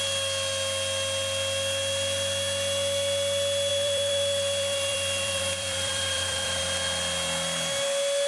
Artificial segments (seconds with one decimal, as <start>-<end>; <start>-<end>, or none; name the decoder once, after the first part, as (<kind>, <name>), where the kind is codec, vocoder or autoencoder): 3.7-6.6 (vocoder, BigVGAN v2)